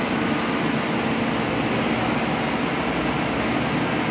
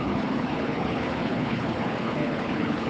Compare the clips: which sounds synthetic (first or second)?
second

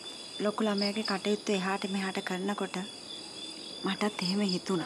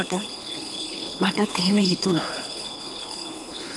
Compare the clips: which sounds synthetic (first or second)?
second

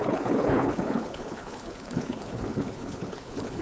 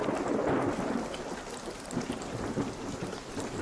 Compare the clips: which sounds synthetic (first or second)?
first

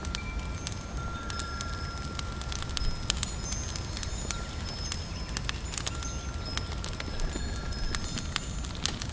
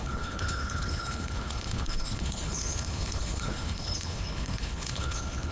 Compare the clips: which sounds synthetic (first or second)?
second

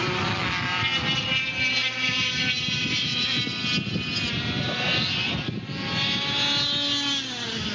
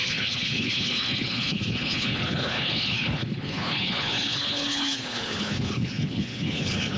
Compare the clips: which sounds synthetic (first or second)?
second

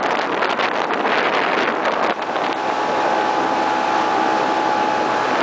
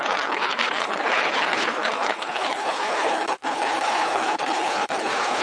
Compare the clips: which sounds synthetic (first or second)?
second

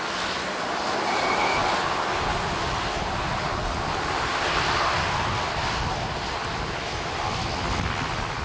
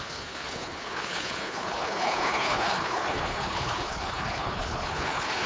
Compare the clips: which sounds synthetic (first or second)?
second